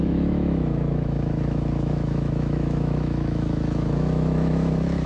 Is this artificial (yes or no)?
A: yes